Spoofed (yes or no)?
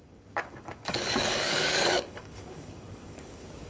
yes